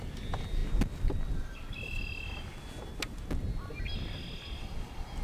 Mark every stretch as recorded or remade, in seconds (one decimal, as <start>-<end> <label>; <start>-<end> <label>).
0.0-5.2 recorded